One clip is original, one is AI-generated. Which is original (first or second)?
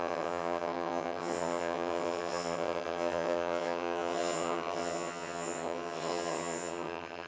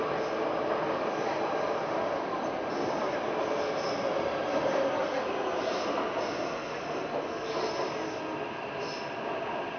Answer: second